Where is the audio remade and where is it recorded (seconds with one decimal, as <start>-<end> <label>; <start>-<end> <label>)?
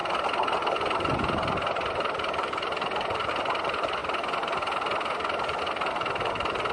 0.0-4.0 remade; 4.0-5.6 recorded; 5.6-6.7 remade